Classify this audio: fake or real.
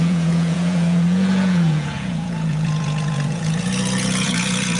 fake